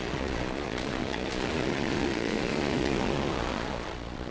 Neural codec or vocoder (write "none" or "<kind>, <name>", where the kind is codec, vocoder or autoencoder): vocoder, Vocos